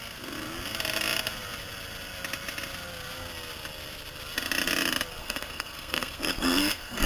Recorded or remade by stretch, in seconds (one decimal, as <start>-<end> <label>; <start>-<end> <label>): 0.0-5.2 recorded; 5.2-7.1 remade